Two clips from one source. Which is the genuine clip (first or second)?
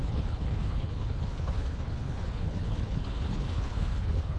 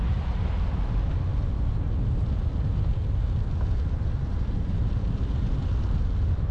second